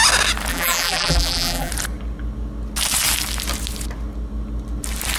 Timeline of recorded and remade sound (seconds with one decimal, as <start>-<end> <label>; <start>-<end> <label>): 0.0-0.5 recorded; 0.5-1.7 remade; 1.7-5.2 recorded